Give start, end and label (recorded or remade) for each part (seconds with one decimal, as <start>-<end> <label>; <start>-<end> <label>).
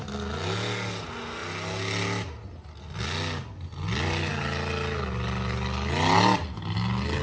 0.0-7.2 recorded